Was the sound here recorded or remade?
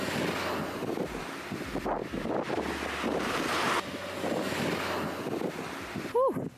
recorded